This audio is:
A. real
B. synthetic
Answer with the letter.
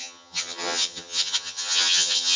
B